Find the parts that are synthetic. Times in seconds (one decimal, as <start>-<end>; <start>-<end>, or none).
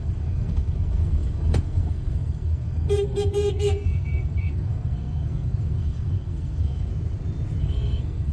0.0-6.9; 7.6-8.3